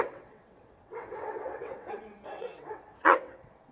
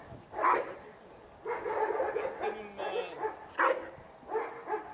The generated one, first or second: first